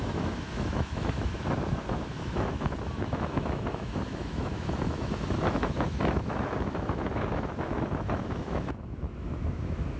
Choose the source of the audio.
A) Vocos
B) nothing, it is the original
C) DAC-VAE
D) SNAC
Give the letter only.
C